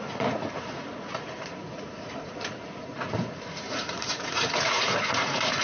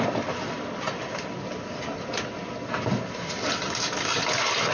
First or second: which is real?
second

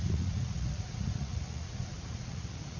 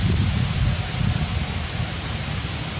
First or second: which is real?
second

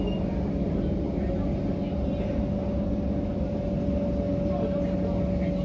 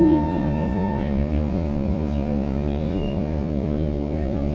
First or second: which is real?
first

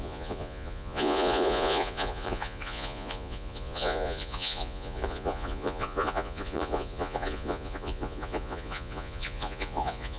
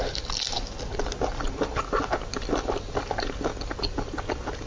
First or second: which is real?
second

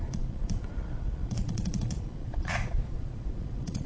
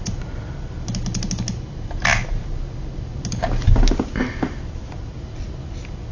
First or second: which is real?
second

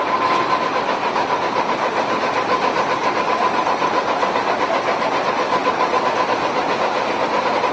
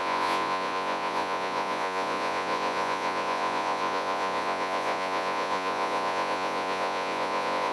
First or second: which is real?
first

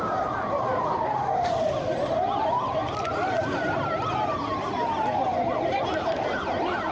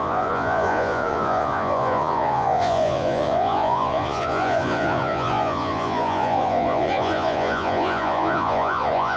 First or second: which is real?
first